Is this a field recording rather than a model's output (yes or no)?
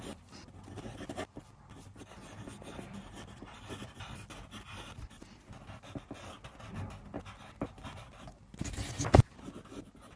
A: yes